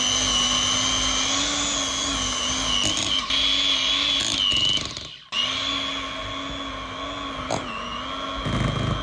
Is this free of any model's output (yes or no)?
yes